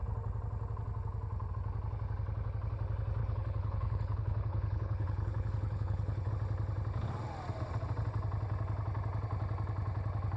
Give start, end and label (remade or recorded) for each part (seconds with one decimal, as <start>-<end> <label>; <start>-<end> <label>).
0.0-3.2 recorded; 3.2-6.3 remade; 6.3-10.4 recorded